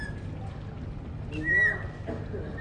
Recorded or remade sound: recorded